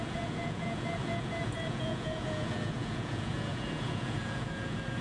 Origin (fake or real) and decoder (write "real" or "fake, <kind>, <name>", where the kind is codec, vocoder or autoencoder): fake, vocoder, Vocos